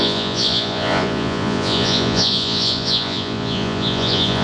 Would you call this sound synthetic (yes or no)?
yes